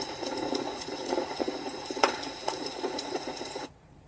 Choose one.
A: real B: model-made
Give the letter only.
B